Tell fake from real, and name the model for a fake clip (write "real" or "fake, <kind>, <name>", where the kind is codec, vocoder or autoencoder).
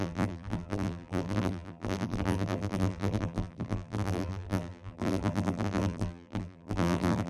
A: fake, vocoder, BigVGAN v2